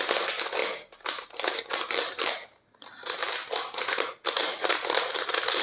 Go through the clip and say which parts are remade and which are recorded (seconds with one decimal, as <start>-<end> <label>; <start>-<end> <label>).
0.0-0.6 remade; 0.6-1.3 recorded; 1.3-3.4 remade; 3.4-4.4 recorded; 4.4-5.6 remade